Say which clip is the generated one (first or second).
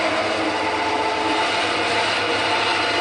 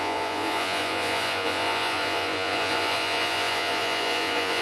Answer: second